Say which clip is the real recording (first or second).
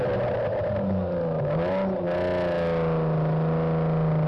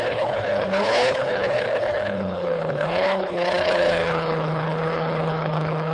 first